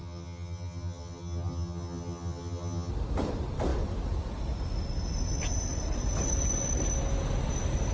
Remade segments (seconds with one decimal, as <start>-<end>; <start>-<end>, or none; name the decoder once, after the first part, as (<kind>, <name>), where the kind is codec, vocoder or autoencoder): 0.0-2.9 (vocoder, HiFi-GAN)